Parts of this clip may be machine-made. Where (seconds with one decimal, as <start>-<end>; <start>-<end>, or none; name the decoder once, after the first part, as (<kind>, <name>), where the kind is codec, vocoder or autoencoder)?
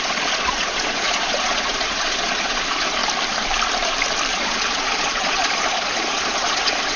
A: 0.0-3.0 (vocoder, Vocos); 4.3-7.0